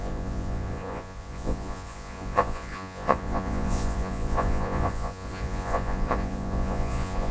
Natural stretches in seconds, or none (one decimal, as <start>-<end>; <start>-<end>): none